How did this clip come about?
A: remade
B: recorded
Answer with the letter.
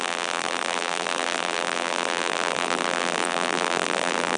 A